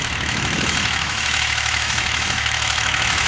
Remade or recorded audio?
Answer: remade